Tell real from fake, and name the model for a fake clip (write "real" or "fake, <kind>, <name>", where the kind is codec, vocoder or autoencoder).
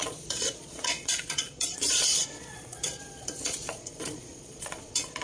fake, vocoder, Vocos